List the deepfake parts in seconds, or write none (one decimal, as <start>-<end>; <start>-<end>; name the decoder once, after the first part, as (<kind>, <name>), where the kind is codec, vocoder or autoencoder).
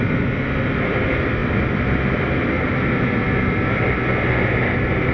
none